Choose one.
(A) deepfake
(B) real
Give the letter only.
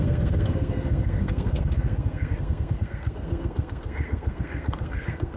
A